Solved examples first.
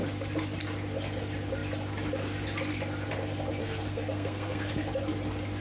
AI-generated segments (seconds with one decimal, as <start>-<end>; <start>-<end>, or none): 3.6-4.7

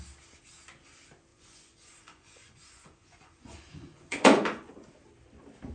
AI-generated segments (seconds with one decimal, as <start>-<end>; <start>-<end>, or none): 1.3-4.7

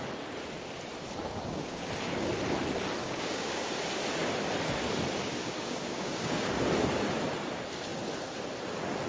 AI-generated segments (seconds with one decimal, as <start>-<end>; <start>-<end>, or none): 1.2-2.3; 3.0-3.7; 5.5-6.5

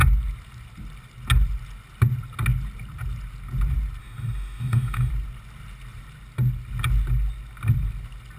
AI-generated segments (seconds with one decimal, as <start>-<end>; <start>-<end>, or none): 4.0-5.1

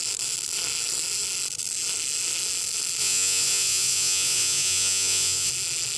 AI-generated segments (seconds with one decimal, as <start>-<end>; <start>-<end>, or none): 3.0-5.5

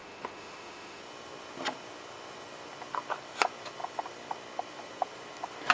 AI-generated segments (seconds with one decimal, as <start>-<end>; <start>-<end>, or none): 0.0-1.0